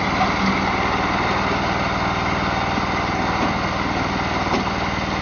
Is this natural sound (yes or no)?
yes